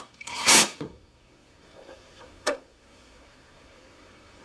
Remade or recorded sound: remade